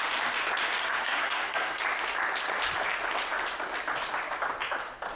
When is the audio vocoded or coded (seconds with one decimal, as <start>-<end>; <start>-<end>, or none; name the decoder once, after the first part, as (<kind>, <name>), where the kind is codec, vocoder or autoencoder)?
0.8-1.8 (codec, SNAC)